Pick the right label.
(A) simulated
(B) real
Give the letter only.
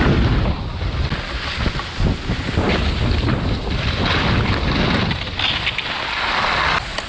B